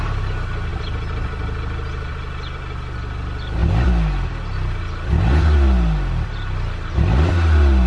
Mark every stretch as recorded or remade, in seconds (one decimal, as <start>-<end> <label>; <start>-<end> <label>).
0.0-7.9 recorded

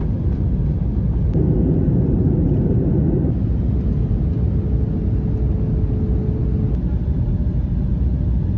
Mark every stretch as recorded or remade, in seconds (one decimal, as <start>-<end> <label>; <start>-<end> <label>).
0.0-8.6 recorded